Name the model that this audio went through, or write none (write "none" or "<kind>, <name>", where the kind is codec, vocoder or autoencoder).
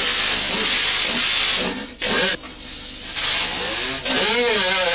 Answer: none